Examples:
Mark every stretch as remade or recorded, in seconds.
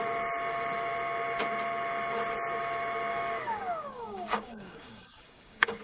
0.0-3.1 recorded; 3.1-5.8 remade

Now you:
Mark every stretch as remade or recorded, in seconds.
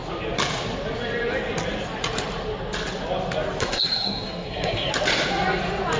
0.0-3.6 recorded; 3.6-4.9 remade; 4.9-6.0 recorded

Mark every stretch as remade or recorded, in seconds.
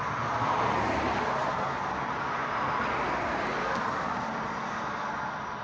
0.0-5.6 recorded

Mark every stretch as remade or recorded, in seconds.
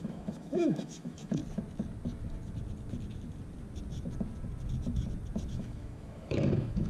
0.0-1.4 remade; 1.4-5.5 recorded; 5.5-6.9 remade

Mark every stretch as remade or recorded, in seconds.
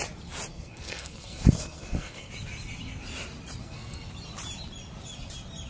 0.0-0.5 recorded; 0.5-2.3 remade; 2.3-3.6 recorded; 3.6-4.1 remade; 4.1-5.7 recorded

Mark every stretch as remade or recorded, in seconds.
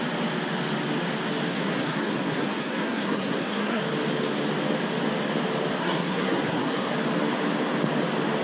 0.0-1.5 recorded; 1.5-3.8 remade; 3.8-5.8 recorded; 5.8-6.9 remade; 6.9-8.4 recorded